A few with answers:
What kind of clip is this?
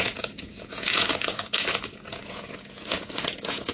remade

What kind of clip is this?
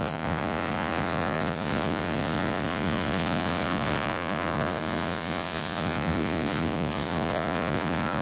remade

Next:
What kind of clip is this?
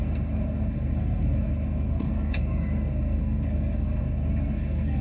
remade